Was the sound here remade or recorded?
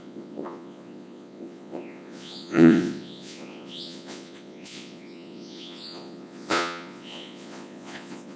remade